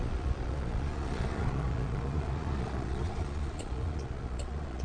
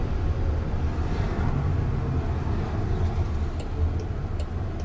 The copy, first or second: first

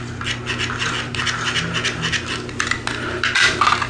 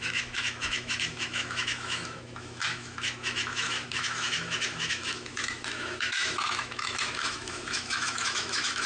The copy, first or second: second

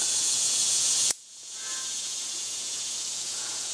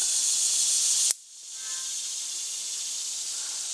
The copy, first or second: first